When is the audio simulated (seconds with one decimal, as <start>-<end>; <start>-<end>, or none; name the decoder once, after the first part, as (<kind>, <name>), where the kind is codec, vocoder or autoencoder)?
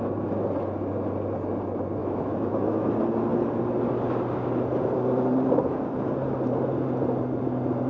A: 2.0-2.9 (autoencoder, DAC-VAE)